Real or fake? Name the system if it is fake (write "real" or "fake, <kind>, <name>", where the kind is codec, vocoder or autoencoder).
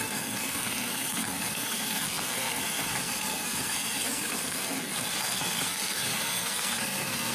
fake, codec, SNAC